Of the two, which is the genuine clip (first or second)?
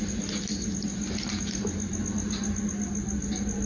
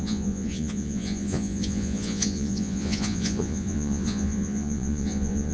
first